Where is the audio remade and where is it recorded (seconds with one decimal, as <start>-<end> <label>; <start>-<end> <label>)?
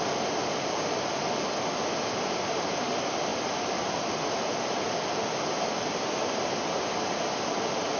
0.0-8.0 recorded